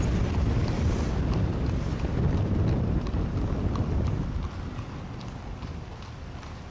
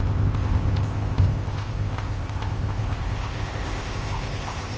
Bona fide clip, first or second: first